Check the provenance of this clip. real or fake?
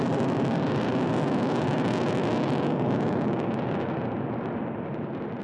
fake